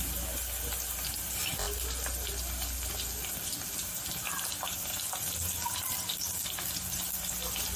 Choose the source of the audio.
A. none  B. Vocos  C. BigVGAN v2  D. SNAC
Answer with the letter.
A